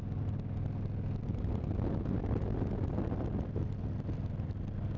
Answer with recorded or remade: recorded